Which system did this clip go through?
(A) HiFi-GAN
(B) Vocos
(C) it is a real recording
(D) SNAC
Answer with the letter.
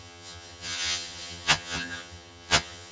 A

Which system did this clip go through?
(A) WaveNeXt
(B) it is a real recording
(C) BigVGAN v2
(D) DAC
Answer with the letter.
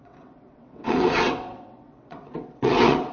A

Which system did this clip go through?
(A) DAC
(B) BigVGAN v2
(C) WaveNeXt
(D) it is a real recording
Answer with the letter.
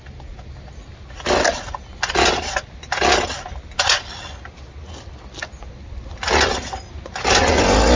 D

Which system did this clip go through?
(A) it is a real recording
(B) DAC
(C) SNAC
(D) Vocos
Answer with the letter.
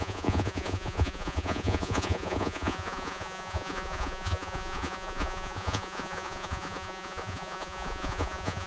D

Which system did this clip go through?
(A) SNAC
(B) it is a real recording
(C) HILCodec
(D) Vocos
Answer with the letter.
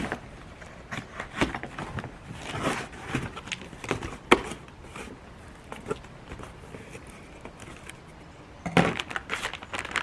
B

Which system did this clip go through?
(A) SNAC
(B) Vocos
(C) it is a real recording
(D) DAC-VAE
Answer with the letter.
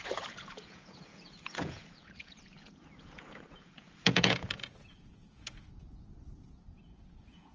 B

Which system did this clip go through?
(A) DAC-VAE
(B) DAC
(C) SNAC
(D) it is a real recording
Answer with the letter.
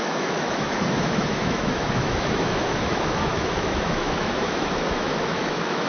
A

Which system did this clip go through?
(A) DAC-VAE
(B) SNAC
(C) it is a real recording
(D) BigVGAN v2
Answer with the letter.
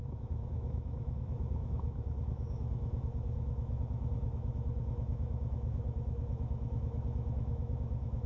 A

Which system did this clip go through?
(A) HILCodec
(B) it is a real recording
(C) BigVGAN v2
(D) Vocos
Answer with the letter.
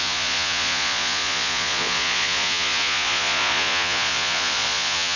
D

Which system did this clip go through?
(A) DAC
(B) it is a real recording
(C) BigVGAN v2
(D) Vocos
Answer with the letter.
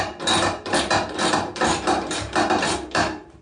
C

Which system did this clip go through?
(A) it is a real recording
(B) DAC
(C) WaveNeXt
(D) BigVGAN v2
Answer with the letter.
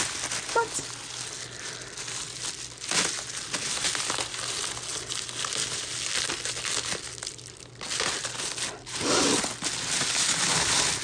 A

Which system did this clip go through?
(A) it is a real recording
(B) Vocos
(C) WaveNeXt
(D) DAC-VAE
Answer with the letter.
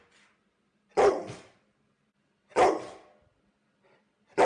A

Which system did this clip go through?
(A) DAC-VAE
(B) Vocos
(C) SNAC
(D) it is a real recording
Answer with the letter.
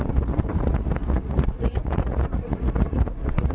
B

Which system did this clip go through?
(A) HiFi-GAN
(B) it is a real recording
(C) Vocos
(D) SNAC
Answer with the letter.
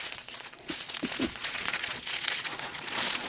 C